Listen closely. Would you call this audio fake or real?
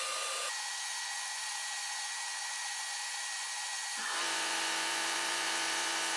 fake